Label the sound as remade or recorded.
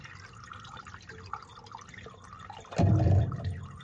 recorded